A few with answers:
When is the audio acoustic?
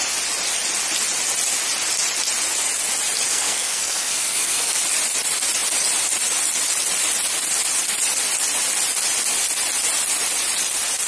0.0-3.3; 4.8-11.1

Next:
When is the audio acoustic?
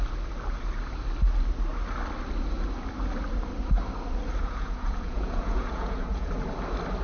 0.0-4.4; 6.3-7.0